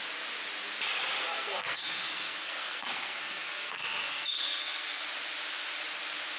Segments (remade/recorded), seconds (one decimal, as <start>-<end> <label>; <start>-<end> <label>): 0.0-1.2 recorded; 1.2-5.0 remade; 5.0-6.4 recorded